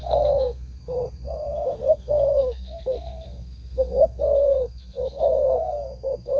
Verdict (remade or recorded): remade